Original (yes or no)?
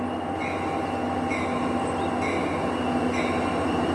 yes